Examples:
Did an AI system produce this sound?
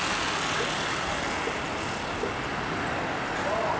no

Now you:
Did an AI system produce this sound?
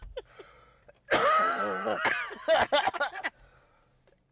no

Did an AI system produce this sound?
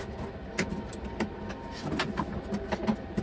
no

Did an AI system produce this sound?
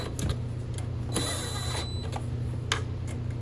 no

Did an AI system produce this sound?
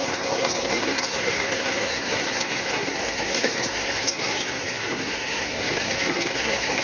yes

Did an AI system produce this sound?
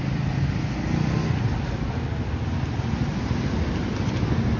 no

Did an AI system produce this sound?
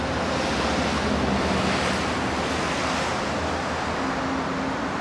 no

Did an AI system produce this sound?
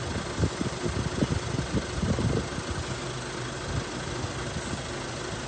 no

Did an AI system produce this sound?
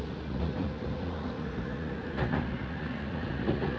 yes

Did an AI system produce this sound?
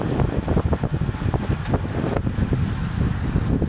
no